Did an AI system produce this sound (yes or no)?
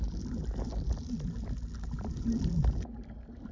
no